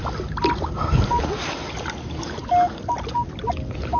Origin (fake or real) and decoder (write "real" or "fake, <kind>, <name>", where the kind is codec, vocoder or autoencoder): real